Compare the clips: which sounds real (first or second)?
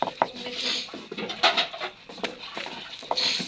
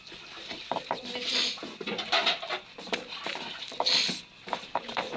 second